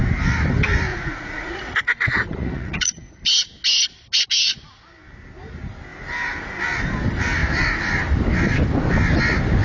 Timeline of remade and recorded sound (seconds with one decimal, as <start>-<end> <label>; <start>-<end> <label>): 0.0-0.9 recorded; 0.9-3.1 remade; 3.1-9.6 recorded